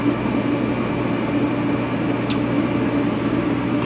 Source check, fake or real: real